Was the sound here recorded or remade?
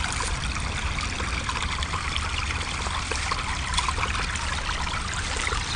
recorded